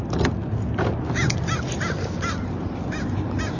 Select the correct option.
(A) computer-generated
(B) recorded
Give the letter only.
B